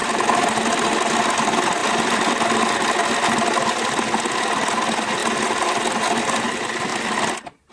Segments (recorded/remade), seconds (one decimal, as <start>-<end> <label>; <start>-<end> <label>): 0.0-7.7 recorded